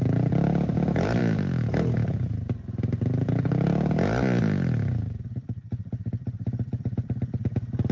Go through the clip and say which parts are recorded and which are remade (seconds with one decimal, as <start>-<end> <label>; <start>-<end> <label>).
0.0-1.2 recorded; 1.2-1.7 remade; 1.7-7.9 recorded